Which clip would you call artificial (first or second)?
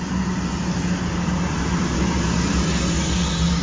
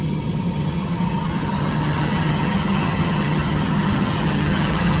second